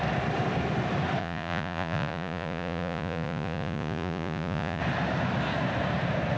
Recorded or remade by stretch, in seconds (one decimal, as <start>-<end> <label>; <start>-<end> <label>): 0.0-1.2 recorded; 1.2-4.8 remade; 4.8-6.4 recorded